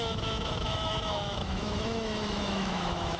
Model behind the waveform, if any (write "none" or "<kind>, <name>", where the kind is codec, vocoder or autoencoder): autoencoder, DAC-VAE